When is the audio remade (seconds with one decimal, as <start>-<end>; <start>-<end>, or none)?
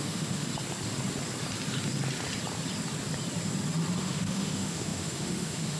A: 0.0-0.5; 4.0-5.8